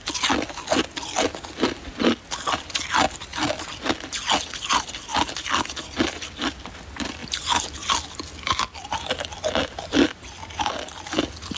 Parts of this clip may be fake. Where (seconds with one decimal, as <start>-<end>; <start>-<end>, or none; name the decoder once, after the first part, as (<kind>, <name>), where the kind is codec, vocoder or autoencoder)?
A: none